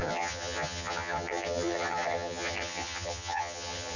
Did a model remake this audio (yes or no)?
yes